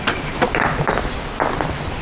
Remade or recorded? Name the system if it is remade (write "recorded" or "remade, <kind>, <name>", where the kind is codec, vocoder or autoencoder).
recorded